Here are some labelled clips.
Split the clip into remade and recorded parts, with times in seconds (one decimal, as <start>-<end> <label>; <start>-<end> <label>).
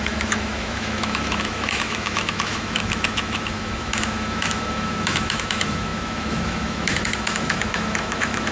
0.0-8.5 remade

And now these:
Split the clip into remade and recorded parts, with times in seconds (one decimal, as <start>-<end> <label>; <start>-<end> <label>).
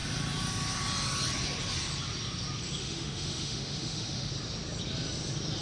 0.0-2.8 recorded; 2.8-4.3 remade; 4.3-5.6 recorded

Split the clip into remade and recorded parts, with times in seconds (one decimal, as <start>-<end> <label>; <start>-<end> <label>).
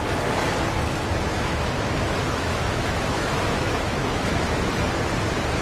0.0-1.3 recorded; 1.3-4.7 remade; 4.7-5.6 recorded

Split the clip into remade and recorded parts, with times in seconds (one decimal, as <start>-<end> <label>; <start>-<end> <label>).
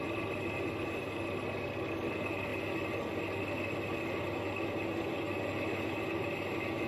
0.0-6.9 recorded